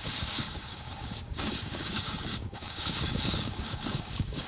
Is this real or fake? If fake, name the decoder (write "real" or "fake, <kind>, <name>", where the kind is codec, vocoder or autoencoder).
fake, codec, DAC